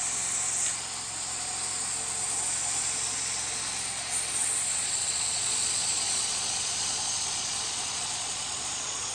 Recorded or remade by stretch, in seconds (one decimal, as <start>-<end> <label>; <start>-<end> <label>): 0.0-4.7 recorded; 4.7-9.1 remade